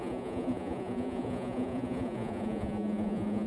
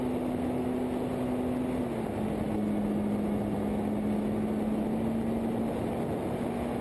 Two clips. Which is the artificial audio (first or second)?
first